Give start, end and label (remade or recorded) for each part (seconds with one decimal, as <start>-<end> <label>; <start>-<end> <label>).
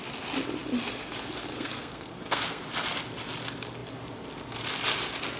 0.0-1.4 recorded; 1.4-2.6 remade; 2.6-5.4 recorded